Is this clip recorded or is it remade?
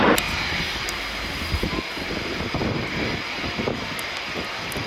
recorded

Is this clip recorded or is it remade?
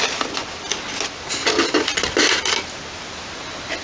recorded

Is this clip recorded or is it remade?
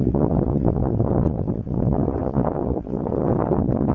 remade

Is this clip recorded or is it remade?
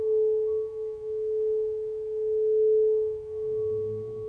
remade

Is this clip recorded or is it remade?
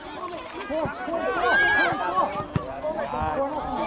recorded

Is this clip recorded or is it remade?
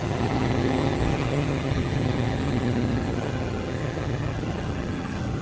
remade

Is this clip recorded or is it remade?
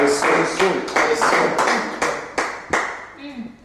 recorded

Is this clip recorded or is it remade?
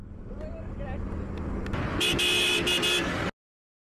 recorded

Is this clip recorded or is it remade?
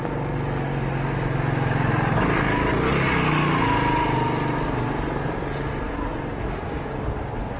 recorded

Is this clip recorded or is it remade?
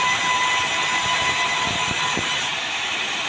recorded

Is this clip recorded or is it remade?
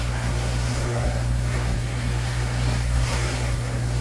remade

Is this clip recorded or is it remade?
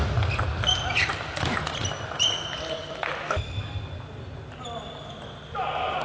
recorded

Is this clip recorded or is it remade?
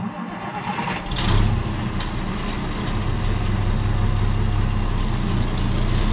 recorded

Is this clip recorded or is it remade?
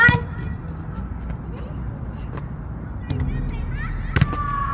recorded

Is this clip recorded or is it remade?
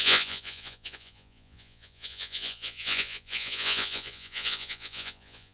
remade